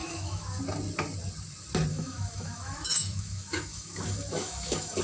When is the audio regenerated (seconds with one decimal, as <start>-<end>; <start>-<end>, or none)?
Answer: 0.0-0.6; 1.9-5.0